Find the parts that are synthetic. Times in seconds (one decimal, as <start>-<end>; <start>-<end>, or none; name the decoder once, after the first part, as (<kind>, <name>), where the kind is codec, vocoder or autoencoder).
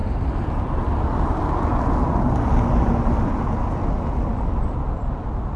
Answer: none